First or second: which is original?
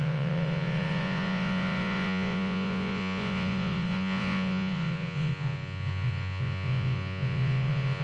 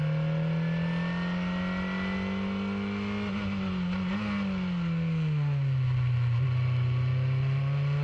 second